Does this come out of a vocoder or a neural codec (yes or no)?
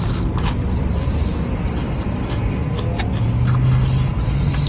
no